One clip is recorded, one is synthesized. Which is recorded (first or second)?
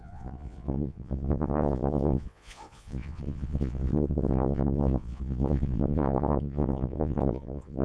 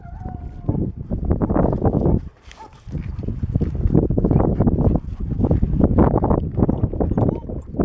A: second